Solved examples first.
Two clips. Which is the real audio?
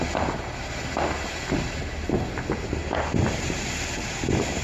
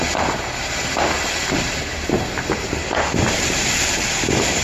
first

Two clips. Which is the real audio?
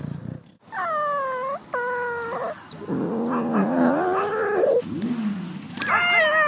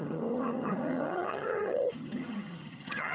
first